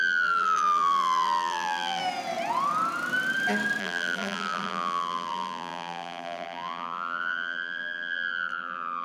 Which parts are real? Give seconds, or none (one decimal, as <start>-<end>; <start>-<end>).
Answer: 2.0-3.8